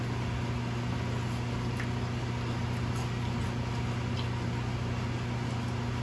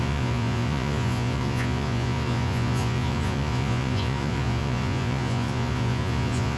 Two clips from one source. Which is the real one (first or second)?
first